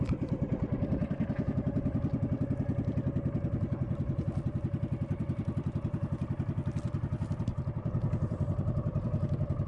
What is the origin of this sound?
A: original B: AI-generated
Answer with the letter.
B